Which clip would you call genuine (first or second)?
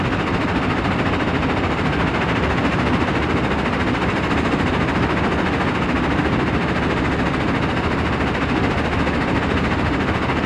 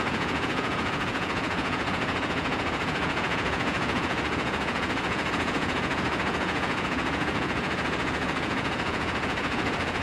first